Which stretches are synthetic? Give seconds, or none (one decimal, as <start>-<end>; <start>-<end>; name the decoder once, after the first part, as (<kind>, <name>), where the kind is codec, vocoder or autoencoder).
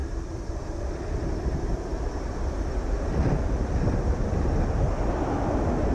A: none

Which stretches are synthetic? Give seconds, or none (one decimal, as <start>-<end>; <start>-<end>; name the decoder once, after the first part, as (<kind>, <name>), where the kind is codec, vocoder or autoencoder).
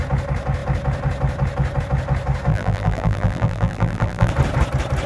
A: 2.5-4.3 (vocoder, BigVGAN v2)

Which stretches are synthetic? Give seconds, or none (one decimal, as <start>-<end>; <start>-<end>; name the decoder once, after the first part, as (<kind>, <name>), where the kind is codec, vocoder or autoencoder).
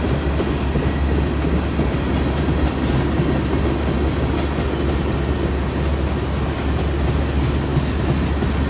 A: none